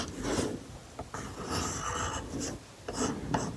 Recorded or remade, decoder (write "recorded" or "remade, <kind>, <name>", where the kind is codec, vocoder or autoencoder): recorded